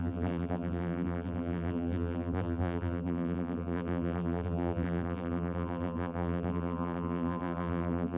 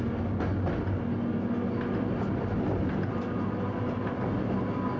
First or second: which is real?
second